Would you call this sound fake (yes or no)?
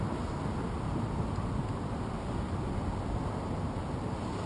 no